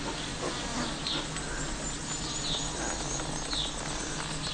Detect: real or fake real